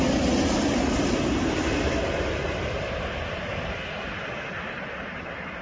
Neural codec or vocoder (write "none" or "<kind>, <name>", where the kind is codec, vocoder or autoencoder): none